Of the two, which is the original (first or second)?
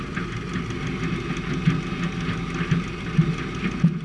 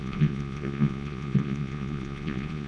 first